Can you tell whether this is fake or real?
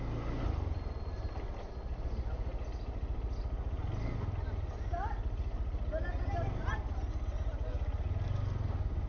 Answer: real